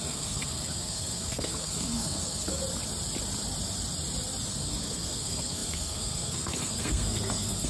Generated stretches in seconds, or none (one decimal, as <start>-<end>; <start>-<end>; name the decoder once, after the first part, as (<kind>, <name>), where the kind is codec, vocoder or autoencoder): 0.0-2.6 (codec, SNAC); 4.5-7.7